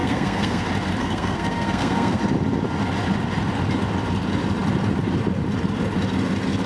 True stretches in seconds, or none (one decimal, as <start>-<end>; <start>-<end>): 0.6-1.0; 2.2-6.7

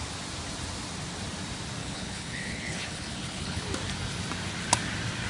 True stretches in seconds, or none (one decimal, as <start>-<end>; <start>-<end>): 0.0-1.8; 3.6-5.3

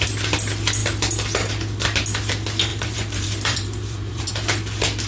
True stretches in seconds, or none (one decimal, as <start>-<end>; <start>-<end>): 0.0-2.7; 4.3-5.1

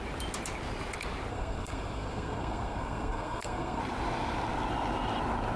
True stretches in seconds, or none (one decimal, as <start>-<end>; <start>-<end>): 0.0-1.3; 3.8-5.6